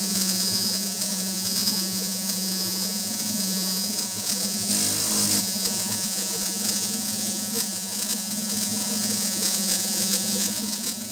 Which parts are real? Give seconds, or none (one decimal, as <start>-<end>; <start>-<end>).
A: 4.7-5.4